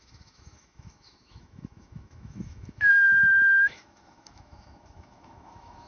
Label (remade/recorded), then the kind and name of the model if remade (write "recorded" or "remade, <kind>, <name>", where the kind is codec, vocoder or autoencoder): remade, autoencoder, DAC-VAE